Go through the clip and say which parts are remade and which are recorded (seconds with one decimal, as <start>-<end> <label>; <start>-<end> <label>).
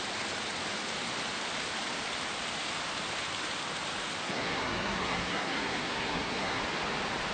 0.0-4.2 recorded; 4.2-6.6 remade; 6.6-7.3 recorded